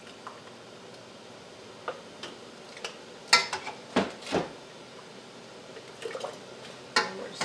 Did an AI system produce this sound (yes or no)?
no